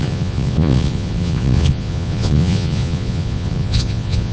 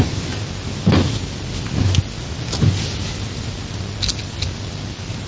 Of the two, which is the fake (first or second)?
first